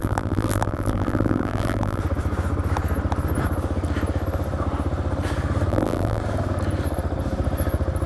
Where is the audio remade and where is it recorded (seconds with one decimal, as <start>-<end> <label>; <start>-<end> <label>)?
0.0-2.0 remade; 2.0-5.7 recorded; 5.7-6.2 remade; 6.2-8.1 recorded